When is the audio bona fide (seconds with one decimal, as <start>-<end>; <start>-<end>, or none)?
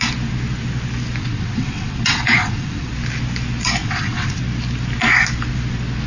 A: 0.0-1.2; 2.9-3.8; 4.4-6.1